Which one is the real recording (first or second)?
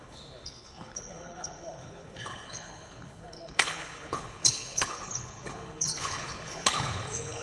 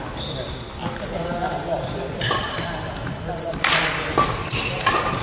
second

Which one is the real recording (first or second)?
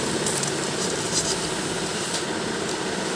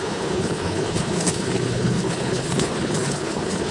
first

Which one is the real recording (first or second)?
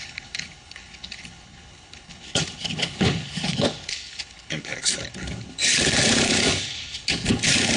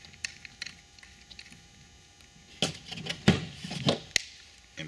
second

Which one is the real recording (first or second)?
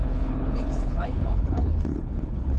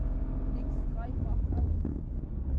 second